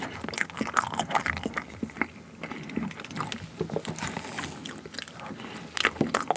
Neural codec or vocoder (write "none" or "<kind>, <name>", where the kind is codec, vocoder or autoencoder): none